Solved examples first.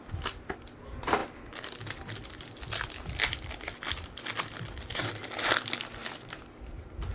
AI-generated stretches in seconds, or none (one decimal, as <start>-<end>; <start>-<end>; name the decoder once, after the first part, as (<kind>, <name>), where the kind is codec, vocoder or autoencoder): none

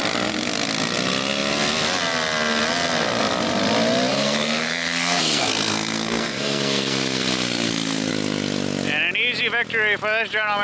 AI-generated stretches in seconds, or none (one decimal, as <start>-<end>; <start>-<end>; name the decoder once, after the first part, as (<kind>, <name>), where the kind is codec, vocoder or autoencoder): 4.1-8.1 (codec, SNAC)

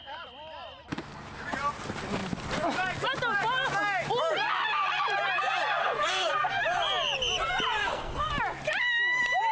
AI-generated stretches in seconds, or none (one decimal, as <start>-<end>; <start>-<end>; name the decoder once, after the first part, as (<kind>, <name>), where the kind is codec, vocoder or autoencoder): 5.8-6.6 (codec, SNAC); 7.8-8.3